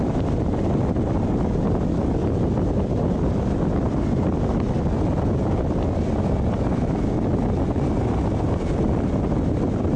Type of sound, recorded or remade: recorded